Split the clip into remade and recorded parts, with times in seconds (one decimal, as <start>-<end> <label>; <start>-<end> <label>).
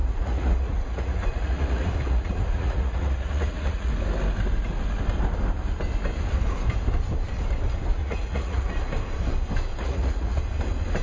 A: 0.0-3.9 remade; 3.9-8.0 recorded; 8.0-8.7 remade; 8.7-9.8 recorded; 9.8-10.4 remade; 10.4-11.0 recorded